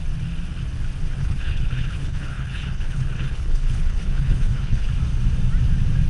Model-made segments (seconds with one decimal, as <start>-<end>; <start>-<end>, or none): 1.2-4.9